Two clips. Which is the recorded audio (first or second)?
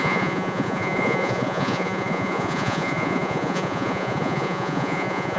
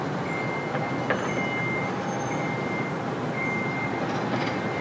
second